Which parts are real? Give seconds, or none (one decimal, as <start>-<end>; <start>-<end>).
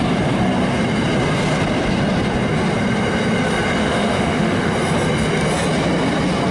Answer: 0.0-3.8; 4.7-6.5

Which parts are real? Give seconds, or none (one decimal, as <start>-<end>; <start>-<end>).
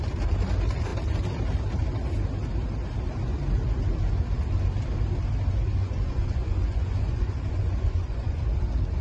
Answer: 0.0-5.8; 8.4-9.0